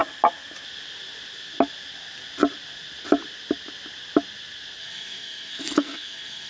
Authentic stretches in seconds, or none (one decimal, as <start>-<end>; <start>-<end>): 0.0-4.8